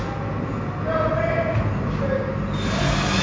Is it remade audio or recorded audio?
recorded